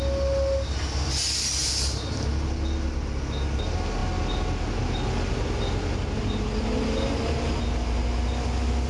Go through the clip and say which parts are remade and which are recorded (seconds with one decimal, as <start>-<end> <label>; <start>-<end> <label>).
0.0-8.9 recorded